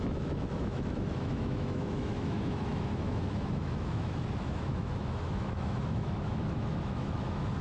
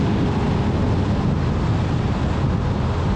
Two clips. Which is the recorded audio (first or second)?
second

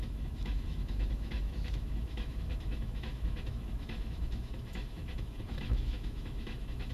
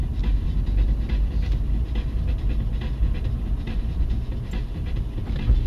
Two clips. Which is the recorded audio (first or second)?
second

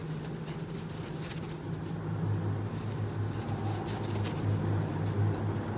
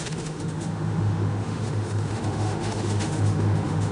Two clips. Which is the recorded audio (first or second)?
first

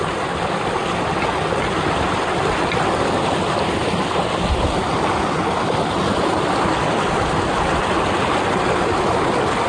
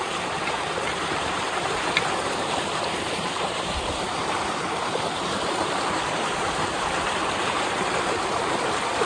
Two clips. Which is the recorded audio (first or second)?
first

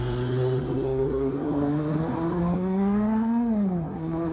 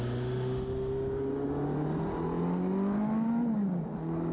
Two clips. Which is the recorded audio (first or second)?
second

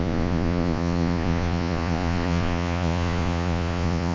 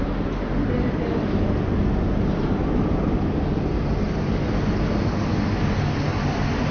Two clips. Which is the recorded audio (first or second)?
second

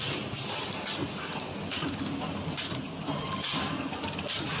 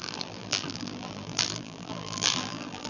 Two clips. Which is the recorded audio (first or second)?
first